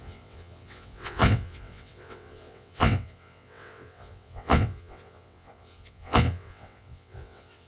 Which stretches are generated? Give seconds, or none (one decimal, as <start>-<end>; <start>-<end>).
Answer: 0.0-7.7